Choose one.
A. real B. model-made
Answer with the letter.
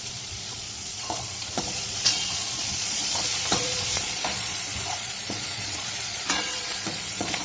B